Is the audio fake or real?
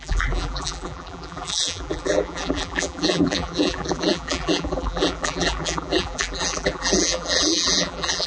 fake